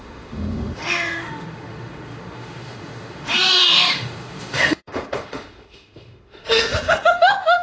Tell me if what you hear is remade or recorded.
remade